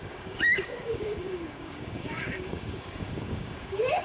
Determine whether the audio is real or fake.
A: fake